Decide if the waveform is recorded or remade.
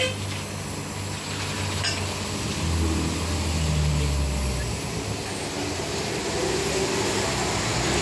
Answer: recorded